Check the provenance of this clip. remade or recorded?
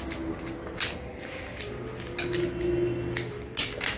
recorded